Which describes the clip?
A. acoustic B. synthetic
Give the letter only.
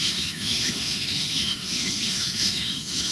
B